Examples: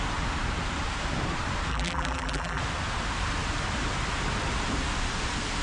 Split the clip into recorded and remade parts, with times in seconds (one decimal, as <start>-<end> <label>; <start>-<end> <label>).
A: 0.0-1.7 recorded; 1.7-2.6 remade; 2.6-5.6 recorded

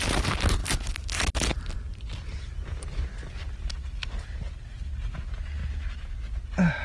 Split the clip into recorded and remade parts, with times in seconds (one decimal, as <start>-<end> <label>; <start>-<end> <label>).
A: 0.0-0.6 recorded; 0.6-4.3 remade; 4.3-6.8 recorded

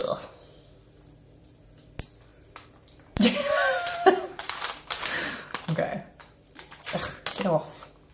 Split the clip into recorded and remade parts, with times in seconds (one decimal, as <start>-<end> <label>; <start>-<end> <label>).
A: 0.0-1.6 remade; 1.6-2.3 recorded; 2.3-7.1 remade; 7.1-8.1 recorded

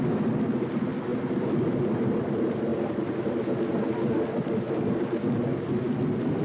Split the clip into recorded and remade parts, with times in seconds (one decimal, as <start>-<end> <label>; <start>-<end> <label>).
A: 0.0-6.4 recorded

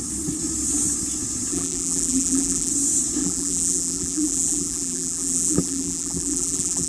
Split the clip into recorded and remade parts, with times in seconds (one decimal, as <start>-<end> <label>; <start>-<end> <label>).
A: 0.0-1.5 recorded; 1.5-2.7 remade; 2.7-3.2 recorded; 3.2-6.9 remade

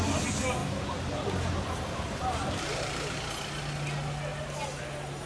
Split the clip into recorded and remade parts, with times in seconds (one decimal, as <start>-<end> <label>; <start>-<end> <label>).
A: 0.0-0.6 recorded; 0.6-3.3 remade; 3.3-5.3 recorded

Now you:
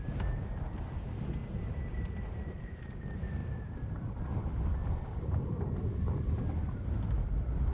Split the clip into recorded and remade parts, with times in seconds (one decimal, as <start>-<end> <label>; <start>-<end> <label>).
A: 0.0-1.4 recorded; 1.4-2.6 remade; 2.6-7.7 recorded